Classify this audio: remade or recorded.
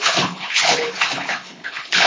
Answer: remade